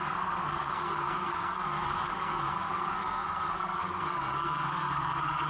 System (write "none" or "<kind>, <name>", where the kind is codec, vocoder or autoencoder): codec, SNAC